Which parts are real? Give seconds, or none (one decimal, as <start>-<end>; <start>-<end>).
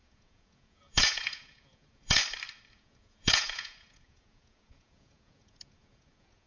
2.2-2.7